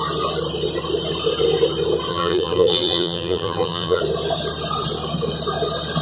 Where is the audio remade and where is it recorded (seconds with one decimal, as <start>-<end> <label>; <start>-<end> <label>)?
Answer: 0.0-2.1 recorded; 2.1-4.0 remade; 4.0-6.0 recorded